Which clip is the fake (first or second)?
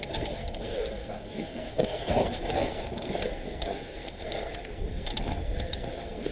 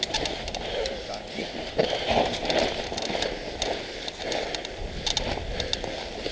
first